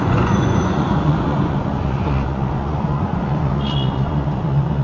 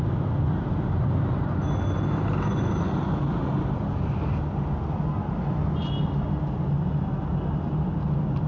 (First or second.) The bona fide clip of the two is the second